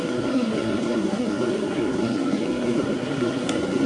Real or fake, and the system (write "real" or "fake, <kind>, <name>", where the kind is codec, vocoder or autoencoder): fake, codec, SNAC